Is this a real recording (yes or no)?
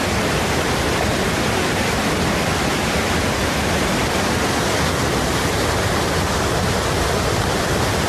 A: no